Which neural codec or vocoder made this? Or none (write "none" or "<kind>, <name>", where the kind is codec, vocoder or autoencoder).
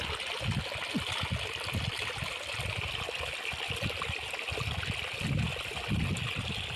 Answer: none